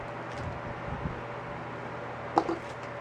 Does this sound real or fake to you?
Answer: real